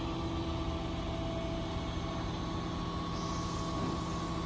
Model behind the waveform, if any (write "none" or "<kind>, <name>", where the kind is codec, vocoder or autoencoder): none